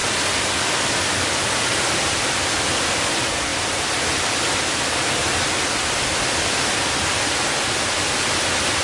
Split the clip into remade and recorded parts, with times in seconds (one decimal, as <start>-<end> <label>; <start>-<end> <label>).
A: 0.0-8.8 recorded